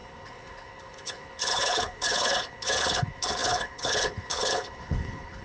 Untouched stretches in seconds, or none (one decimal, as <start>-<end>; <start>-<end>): none

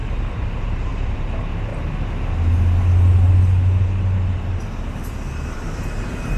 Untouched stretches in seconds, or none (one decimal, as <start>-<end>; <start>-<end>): 1.7-5.5

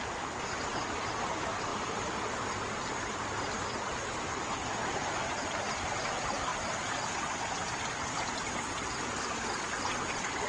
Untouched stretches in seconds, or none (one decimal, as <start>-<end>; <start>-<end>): 0.0-10.5

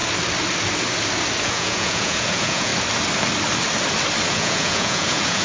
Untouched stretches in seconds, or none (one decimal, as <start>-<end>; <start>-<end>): 0.0-1.4; 2.7-4.3